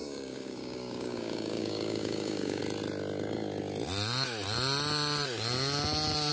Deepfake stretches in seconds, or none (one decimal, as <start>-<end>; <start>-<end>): 0.0-2.6